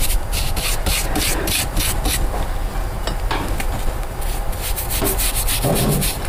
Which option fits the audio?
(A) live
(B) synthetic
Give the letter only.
A